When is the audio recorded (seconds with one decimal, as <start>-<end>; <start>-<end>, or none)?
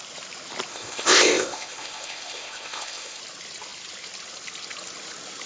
0.0-0.7; 3.2-5.5